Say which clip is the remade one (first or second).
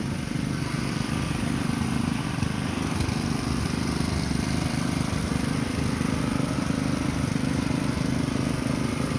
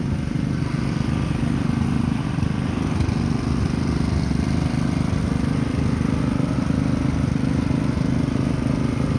first